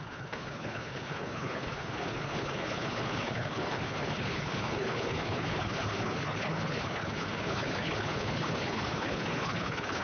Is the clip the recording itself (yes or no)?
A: no